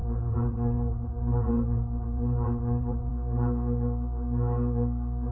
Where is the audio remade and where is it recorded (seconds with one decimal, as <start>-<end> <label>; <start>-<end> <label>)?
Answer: 0.0-3.1 remade; 3.1-5.3 recorded